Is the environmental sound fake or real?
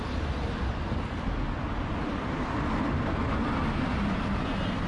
real